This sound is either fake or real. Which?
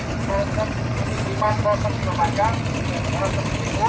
real